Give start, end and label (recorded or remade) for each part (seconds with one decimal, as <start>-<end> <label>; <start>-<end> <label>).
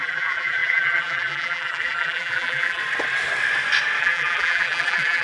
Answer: 0.0-2.8 remade; 2.8-4.0 recorded; 4.0-5.2 remade